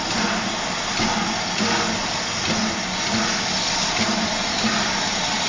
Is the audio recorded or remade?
recorded